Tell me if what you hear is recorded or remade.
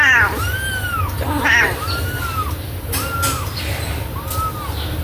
recorded